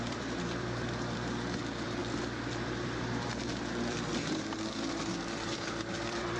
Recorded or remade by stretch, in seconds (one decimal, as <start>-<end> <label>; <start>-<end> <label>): 0.0-6.4 remade